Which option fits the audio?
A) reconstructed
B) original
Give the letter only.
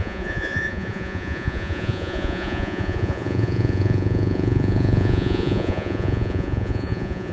A